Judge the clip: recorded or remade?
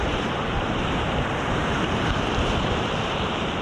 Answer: remade